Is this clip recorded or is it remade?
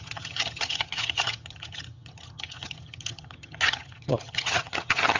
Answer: remade